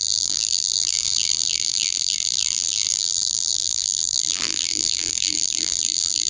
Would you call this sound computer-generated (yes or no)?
yes